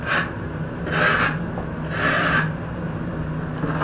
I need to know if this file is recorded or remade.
recorded